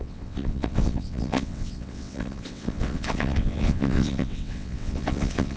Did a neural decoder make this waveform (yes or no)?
yes